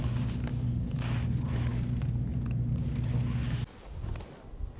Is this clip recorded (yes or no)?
yes